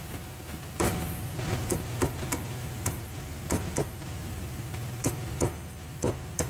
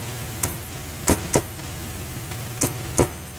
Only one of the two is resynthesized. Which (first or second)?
first